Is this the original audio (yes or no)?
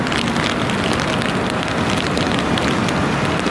yes